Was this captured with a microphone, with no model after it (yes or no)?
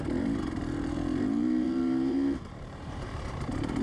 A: no